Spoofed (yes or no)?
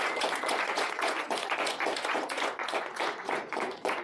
yes